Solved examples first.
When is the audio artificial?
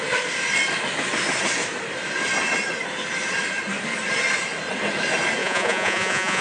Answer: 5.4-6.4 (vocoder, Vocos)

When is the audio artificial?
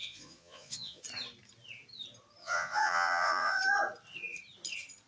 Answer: 0.0-1.0 (vocoder, Vocos); 2.4-3.6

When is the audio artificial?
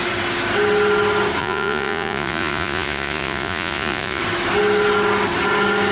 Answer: 1.4-4.2 (vocoder, Vocos)